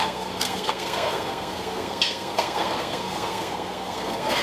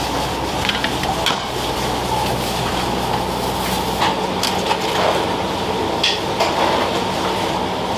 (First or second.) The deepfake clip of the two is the first